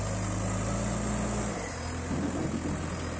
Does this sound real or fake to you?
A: real